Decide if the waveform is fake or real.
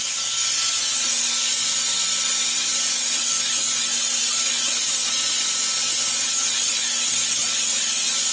real